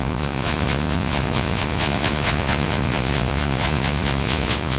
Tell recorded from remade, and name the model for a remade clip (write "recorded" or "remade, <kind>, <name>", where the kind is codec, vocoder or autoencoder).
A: remade, vocoder, Vocos